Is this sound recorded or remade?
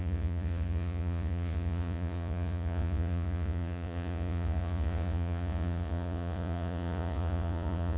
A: remade